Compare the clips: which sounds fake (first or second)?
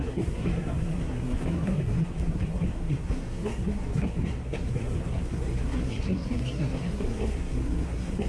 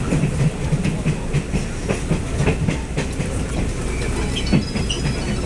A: first